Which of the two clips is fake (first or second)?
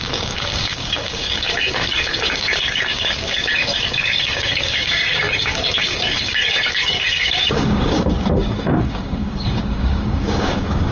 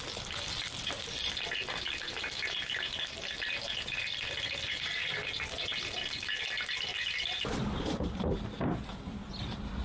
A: first